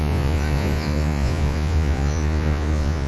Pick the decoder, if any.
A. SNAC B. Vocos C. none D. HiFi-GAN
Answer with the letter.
B